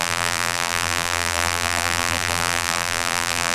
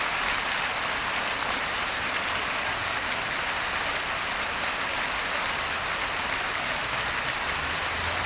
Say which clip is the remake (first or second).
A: first